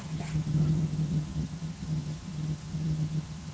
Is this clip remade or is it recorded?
remade